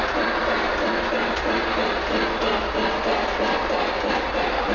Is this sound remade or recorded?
recorded